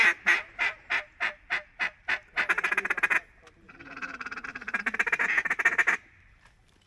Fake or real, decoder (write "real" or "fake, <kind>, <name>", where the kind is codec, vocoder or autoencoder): real